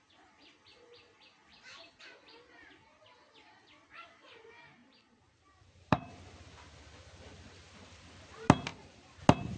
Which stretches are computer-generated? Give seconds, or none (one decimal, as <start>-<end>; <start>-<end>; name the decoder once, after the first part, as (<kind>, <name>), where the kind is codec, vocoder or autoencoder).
1.5-2.0 (vocoder, BigVGAN v2); 4.8-6.1; 8.7-9.2